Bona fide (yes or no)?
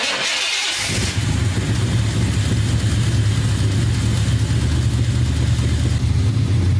yes